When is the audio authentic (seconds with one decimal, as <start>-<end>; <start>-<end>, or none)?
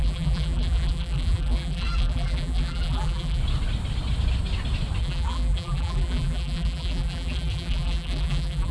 3.4-5.0